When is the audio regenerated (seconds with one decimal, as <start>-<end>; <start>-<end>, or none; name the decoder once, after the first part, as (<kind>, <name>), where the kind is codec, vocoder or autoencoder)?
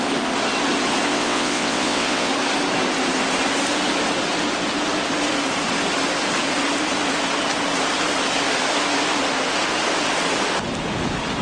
1.1-2.3 (vocoder, WaveNeXt)